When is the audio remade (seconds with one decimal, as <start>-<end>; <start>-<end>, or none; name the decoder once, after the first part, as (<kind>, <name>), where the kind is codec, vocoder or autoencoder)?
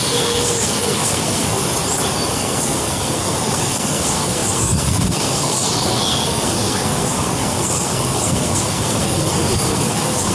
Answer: 0.0-1.6 (codec, SNAC); 2.3-10.3